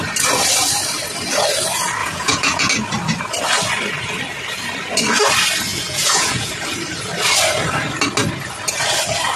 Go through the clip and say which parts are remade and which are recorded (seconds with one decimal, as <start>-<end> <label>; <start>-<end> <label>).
0.0-2.0 recorded; 2.0-2.7 remade; 2.7-5.7 recorded; 5.7-6.5 remade; 6.5-9.4 recorded